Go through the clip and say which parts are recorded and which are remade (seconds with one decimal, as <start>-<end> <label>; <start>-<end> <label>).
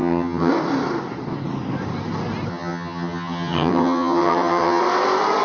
0.0-0.5 remade; 0.5-2.5 recorded; 2.5-4.8 remade; 4.8-5.4 recorded